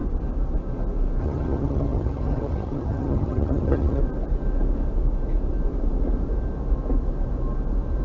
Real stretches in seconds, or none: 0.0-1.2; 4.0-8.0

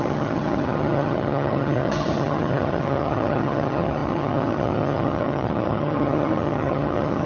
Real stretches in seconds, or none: none

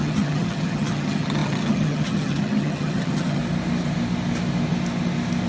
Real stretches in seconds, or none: 3.4-5.5

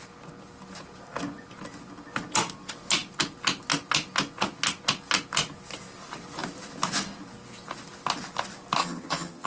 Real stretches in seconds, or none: 0.0-8.8